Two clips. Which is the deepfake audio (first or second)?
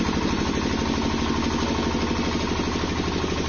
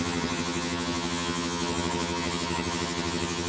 second